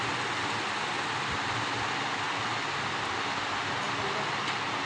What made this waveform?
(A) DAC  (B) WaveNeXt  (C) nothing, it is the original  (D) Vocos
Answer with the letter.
C